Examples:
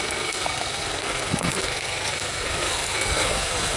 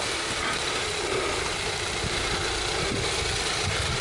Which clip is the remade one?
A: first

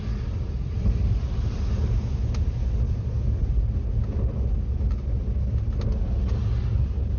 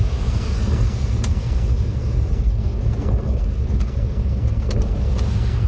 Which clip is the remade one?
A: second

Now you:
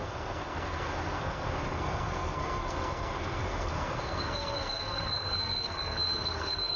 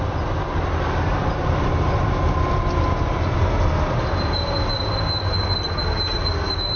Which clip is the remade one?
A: first